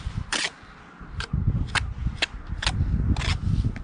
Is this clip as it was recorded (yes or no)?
yes